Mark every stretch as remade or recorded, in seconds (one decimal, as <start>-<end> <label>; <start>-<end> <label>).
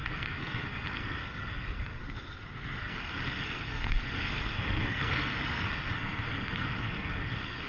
0.0-2.0 remade; 2.0-2.8 recorded; 2.8-7.7 remade